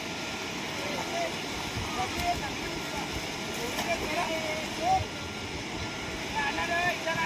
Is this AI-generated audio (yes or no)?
no